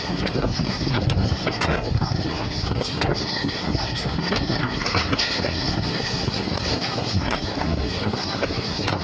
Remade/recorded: remade